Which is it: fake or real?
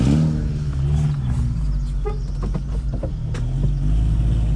real